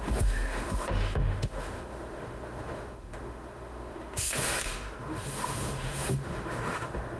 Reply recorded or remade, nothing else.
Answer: remade